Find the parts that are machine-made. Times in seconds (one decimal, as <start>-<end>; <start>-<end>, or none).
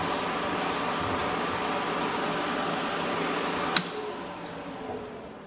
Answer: none